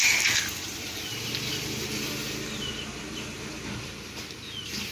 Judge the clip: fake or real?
real